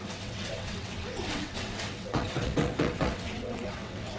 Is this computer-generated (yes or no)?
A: yes